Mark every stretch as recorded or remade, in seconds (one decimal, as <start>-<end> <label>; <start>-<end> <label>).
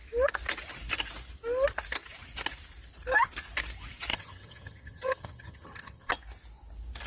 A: 0.0-4.1 recorded; 4.1-6.1 remade; 6.1-7.1 recorded